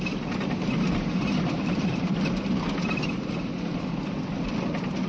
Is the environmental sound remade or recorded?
recorded